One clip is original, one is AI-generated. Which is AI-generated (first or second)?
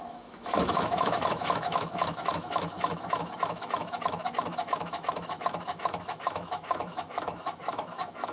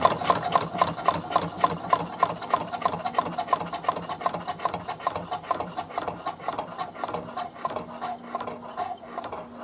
first